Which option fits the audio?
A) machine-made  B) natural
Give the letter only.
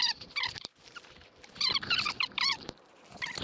A